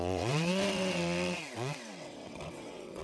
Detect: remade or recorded remade